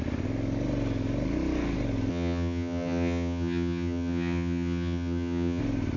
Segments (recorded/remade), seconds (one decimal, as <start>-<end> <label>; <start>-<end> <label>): 0.0-2.1 recorded; 2.1-5.6 remade; 5.6-6.0 recorded

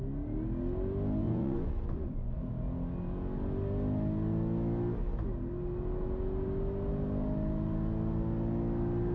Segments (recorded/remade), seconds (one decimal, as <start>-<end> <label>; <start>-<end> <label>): 0.0-1.2 recorded; 1.2-2.4 remade; 2.4-9.1 recorded

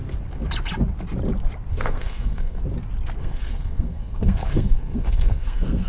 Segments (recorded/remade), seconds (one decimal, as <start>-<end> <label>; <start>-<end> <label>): 0.0-1.7 recorded; 1.7-2.6 remade; 2.6-3.2 recorded; 3.2-5.9 remade

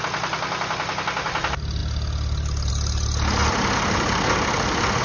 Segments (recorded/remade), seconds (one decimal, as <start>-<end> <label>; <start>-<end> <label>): 0.0-5.0 recorded

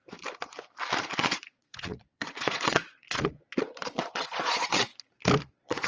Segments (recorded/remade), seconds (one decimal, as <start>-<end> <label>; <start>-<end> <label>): 0.0-1.0 recorded; 1.0-4.9 remade; 4.9-5.5 recorded; 5.5-5.9 remade

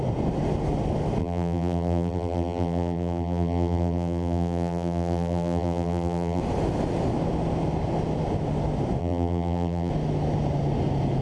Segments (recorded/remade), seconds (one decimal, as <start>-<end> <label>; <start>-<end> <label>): 0.0-1.2 recorded; 1.2-6.4 remade; 6.4-9.0 recorded; 9.0-9.9 remade; 9.9-11.2 recorded

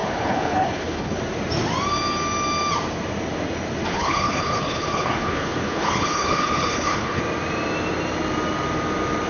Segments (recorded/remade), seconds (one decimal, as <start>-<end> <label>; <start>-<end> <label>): 0.0-1.2 remade; 1.2-3.9 recorded; 3.9-7.2 remade; 7.2-9.3 recorded

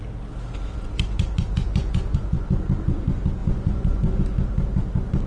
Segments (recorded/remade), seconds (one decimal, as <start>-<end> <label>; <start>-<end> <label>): 0.0-0.7 recorded; 0.7-2.4 remade; 2.4-3.4 recorded; 3.4-4.2 remade; 4.2-5.3 recorded